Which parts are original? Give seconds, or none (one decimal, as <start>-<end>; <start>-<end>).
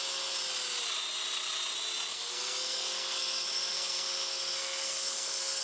0.0-2.1